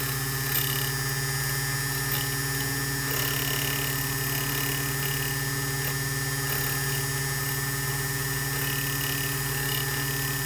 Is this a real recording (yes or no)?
yes